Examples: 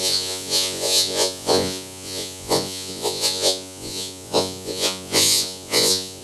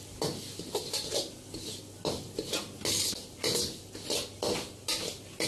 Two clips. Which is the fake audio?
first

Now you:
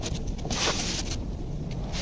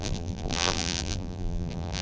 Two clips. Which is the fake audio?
second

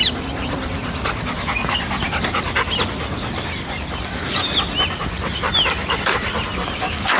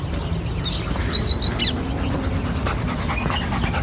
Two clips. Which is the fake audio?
first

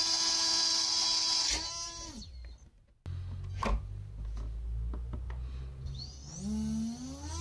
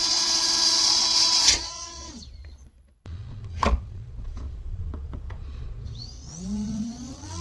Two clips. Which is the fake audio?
second